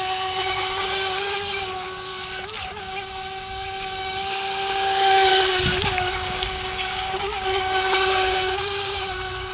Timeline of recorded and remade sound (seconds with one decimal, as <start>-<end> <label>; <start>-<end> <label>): 0.0-2.1 remade; 2.1-2.8 recorded; 2.8-5.3 remade; 5.3-5.9 recorded; 5.9-9.5 remade

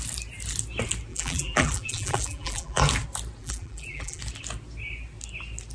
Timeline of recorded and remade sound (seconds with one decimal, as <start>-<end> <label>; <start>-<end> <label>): 0.0-1.1 recorded; 1.1-2.8 remade; 2.8-3.4 recorded; 3.4-4.2 remade; 4.2-5.7 recorded

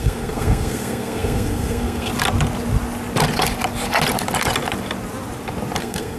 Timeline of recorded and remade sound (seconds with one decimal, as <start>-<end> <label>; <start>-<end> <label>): 0.0-2.1 remade; 2.1-5.8 recorded; 5.8-6.2 remade

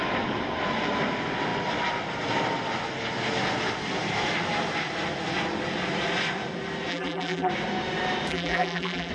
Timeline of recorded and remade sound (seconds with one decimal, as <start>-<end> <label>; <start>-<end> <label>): 0.0-6.9 recorded; 6.9-7.5 remade; 7.5-8.3 recorded; 8.3-9.1 remade

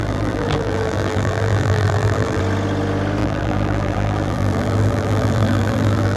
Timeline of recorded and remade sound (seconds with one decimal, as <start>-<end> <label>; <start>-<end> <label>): 0.0-2.4 remade; 2.4-3.2 recorded; 3.2-6.2 remade

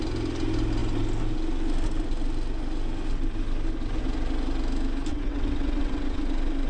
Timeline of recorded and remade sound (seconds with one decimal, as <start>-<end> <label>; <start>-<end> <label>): 0.0-5.1 recorded; 5.1-6.2 remade; 6.2-6.7 recorded

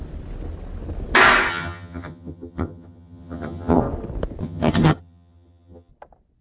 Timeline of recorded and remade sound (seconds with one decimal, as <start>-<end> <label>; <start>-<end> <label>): 0.0-1.5 recorded; 1.5-3.8 remade; 3.8-4.4 recorded; 4.4-5.9 remade; 5.9-6.4 recorded

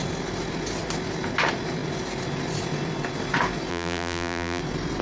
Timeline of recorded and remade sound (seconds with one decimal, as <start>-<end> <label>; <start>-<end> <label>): 0.0-3.7 recorded; 3.7-4.6 remade; 4.6-5.0 recorded